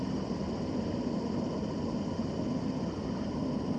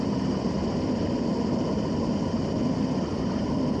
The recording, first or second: first